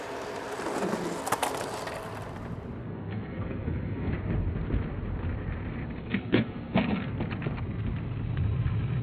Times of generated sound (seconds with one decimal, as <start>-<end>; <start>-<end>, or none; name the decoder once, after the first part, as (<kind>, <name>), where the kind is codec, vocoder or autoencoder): 2.8-4.1 (codec, SNAC); 6.0-7.1